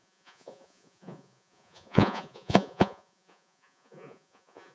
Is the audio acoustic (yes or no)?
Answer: no